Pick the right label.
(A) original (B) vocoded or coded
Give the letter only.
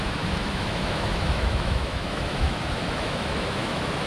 B